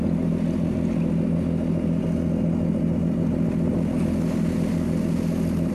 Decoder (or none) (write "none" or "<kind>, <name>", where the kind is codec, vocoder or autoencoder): none